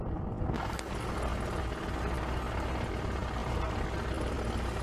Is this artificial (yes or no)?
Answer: no